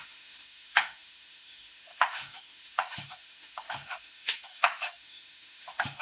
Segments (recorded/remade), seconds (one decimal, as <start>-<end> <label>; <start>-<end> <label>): 0.0-6.0 remade

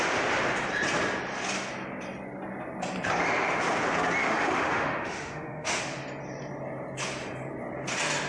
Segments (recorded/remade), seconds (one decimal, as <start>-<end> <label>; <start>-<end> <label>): 0.0-4.2 recorded; 4.2-5.8 remade; 5.8-8.3 recorded